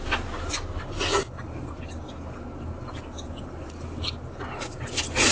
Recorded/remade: recorded